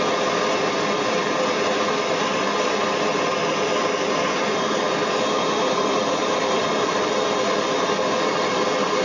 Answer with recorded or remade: recorded